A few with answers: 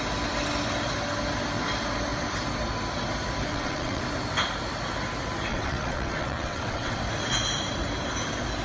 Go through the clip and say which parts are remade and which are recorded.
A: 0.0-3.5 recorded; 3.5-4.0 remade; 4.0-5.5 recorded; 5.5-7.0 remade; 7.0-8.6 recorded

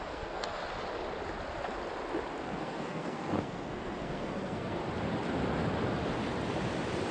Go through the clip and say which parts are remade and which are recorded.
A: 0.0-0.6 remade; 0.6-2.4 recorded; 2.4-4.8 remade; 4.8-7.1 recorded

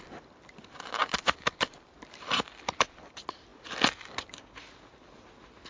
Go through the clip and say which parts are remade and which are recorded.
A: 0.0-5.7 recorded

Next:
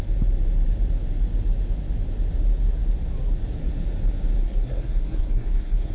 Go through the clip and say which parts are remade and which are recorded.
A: 0.0-4.4 recorded; 4.4-5.9 remade

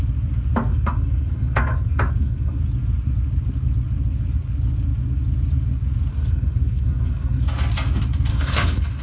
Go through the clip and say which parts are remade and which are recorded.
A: 0.0-0.7 recorded; 0.7-2.6 remade; 2.6-6.1 recorded; 6.1-7.4 remade; 7.4-8.3 recorded; 8.3-9.0 remade

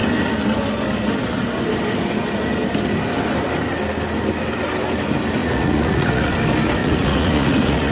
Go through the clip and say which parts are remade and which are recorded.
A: 0.0-5.4 recorded; 5.4-6.3 remade; 6.3-6.8 recorded; 6.8-7.9 remade

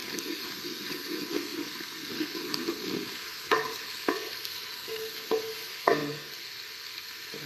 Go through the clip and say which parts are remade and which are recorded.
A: 0.0-7.5 remade